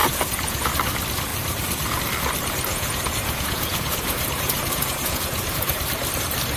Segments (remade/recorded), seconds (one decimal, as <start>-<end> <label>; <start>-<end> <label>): 0.0-0.7 remade; 0.7-2.7 recorded; 2.7-5.8 remade; 5.8-6.6 recorded